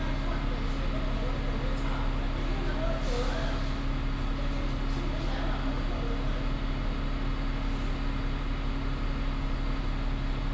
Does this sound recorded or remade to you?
recorded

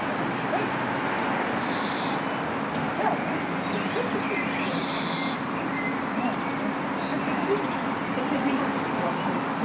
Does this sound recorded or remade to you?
recorded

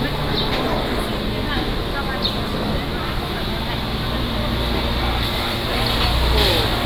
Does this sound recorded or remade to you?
recorded